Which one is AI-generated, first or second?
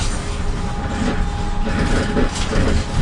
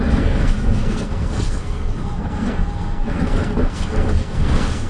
second